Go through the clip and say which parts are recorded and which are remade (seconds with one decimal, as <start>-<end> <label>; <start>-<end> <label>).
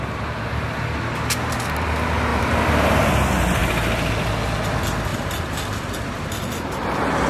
0.0-2.3 recorded; 2.3-3.1 remade; 3.1-3.6 recorded; 3.6-4.1 remade; 4.1-5.1 recorded; 5.1-6.3 remade; 6.3-7.3 recorded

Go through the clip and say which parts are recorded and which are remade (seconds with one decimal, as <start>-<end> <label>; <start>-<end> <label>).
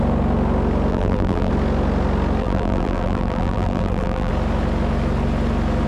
0.0-0.9 recorded; 0.9-1.5 remade; 1.5-2.4 recorded; 2.4-4.3 remade; 4.3-5.9 recorded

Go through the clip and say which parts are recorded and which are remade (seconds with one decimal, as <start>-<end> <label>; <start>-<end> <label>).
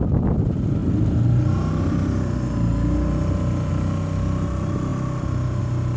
0.0-6.0 recorded